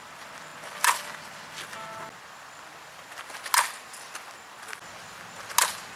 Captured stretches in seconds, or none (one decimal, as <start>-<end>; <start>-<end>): 0.0-6.0